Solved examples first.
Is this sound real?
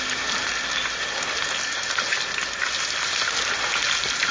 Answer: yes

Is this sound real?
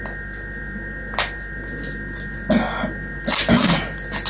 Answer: yes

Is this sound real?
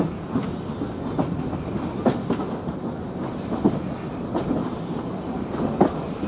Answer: yes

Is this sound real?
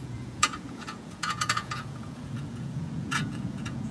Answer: no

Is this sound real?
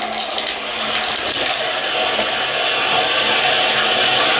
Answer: yes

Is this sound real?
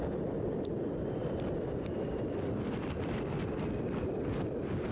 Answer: yes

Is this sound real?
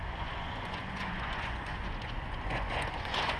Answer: no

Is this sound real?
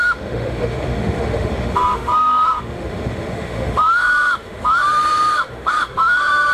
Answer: no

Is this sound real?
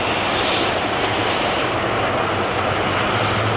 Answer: yes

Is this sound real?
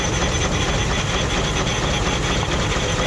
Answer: yes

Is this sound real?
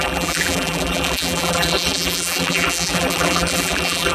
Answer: no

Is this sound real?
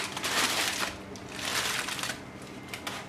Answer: yes